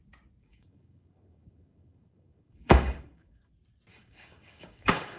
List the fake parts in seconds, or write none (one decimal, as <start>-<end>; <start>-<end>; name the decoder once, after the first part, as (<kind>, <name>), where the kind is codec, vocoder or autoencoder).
0.4-3.5 (codec, DAC); 3.9-5.2